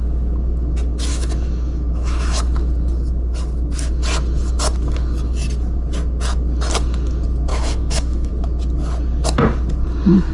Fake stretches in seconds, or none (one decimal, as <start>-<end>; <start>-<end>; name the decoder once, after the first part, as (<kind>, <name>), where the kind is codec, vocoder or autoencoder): 1.1-2.4 (autoencoder, DAC-VAE); 7.5-8.3

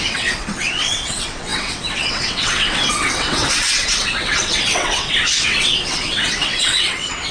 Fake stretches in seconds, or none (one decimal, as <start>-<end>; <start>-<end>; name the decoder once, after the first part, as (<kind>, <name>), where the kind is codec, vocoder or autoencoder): 0.0-7.3 (vocoder, WaveNeXt)